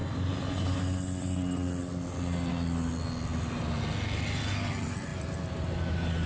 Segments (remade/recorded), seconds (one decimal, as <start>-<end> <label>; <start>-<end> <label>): 0.0-6.3 recorded

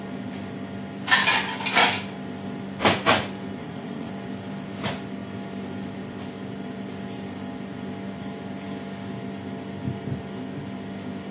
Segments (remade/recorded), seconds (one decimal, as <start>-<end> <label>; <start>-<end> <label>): 0.0-3.6 recorded; 3.6-4.1 remade; 4.1-11.3 recorded